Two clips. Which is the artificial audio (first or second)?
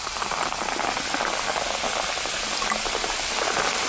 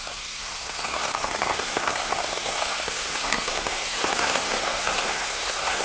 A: second